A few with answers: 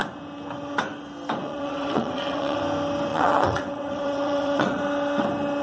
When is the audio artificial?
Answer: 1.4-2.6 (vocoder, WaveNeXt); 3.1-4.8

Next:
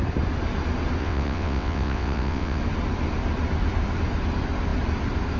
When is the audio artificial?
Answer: 1.0-2.6 (vocoder, WaveNeXt)